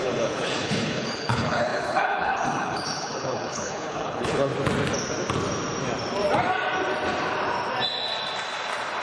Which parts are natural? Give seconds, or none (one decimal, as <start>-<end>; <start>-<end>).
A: 4.5-9.0